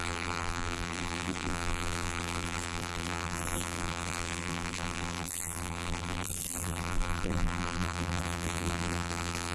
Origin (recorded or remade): remade